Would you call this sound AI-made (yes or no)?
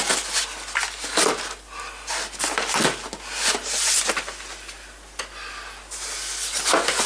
no